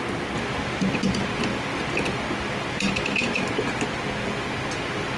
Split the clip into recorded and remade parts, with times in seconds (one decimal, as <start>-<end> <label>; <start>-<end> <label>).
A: 0.0-5.2 recorded